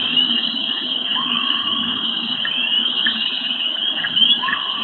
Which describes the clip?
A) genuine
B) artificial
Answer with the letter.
B